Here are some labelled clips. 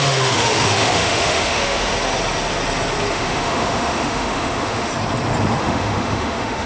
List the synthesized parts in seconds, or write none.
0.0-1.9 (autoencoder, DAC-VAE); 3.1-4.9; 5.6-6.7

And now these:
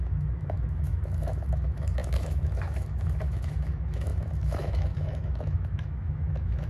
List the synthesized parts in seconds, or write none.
0.0-6.7 (autoencoder, DAC-VAE)

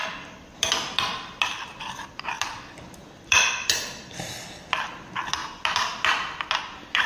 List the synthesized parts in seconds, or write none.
none

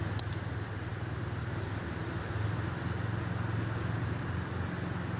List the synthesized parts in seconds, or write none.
none

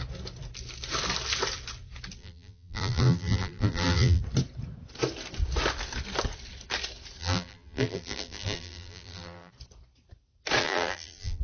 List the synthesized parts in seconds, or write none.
2.2-4.2 (vocoder, BigVGAN v2); 7.2-9.5; 10.6-11.4